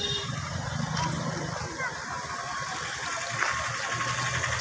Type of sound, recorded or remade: recorded